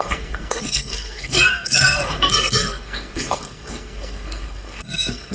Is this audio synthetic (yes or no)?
yes